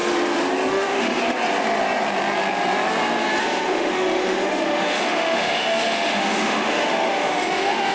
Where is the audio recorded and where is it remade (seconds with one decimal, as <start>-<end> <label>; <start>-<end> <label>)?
0.0-0.7 recorded; 0.7-1.2 remade; 1.2-3.4 recorded; 3.4-7.9 remade